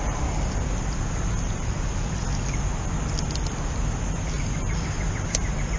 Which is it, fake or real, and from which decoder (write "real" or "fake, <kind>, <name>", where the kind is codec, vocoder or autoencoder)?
real